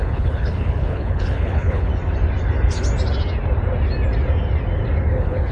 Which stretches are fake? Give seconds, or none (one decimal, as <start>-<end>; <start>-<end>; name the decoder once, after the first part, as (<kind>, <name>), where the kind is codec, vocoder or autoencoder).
0.0-1.9 (codec, HILCodec); 5.1-5.5